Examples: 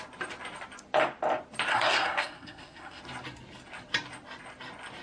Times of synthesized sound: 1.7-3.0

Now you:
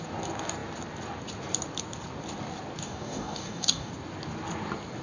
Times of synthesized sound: 2.8-3.9

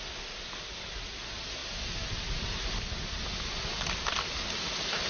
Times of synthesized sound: none

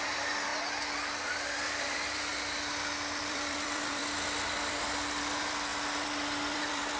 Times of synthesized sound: 0.0-0.5; 1.1-2.3; 3.2-4.0; 4.7-7.0

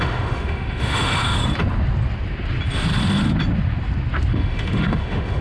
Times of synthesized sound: 0.0-1.4; 4.3-5.4